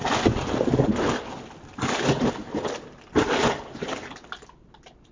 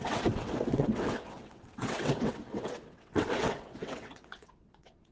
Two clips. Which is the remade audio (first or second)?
second